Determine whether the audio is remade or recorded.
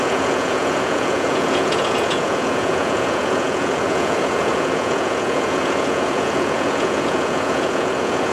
remade